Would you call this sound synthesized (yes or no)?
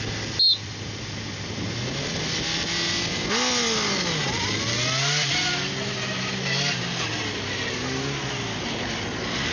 no